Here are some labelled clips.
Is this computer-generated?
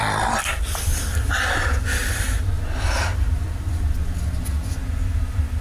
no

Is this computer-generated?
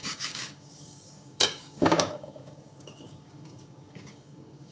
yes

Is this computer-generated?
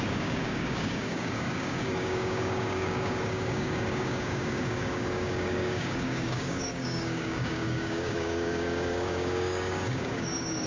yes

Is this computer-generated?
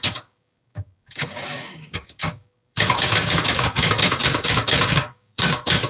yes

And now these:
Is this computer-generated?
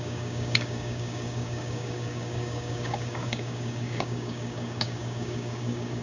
yes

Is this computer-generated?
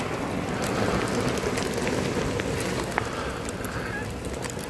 no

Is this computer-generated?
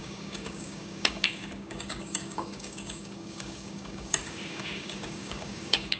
yes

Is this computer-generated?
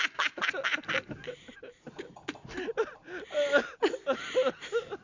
no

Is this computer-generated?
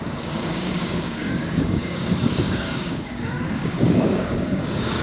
yes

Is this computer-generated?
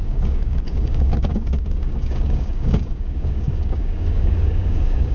yes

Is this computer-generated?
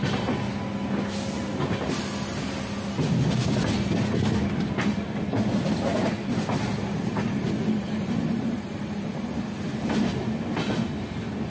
no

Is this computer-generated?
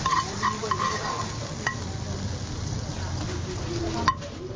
no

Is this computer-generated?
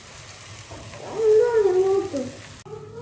no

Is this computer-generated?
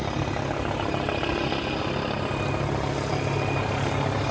no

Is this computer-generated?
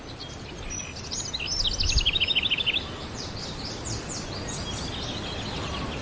no